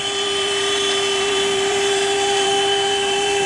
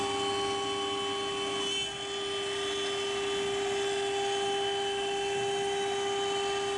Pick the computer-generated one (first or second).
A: first